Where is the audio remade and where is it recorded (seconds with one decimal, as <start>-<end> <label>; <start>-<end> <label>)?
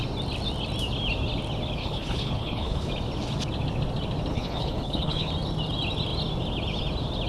0.0-1.8 recorded; 1.8-2.9 remade; 2.9-4.3 recorded; 4.3-5.3 remade; 5.3-7.3 recorded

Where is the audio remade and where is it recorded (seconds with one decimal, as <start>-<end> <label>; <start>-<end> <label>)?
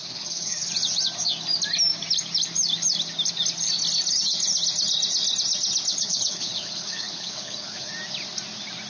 0.0-0.7 remade; 0.7-5.9 recorded; 5.9-7.9 remade; 7.9-8.9 recorded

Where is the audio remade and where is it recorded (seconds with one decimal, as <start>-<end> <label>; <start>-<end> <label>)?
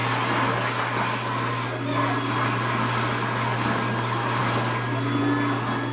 0.0-5.9 recorded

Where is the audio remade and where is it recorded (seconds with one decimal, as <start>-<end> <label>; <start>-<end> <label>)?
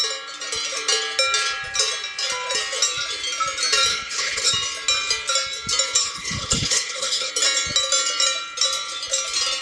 0.0-3.9 recorded; 3.9-4.5 remade; 4.5-6.0 recorded; 6.0-7.3 remade; 7.3-9.6 recorded